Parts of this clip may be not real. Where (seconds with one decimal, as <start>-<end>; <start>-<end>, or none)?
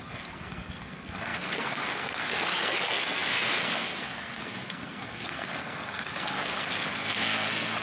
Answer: 0.0-7.8